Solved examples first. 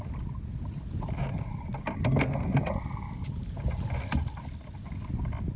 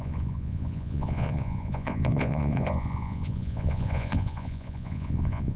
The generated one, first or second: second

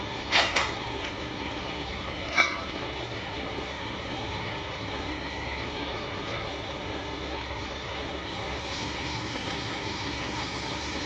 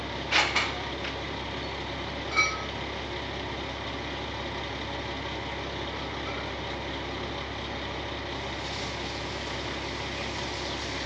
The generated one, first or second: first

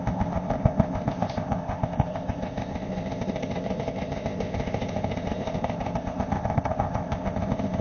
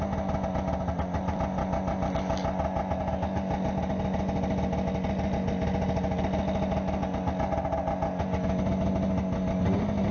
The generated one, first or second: first